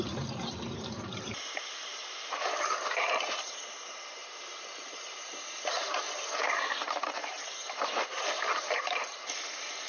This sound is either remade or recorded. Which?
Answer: remade